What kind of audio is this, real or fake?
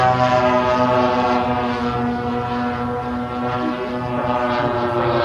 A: real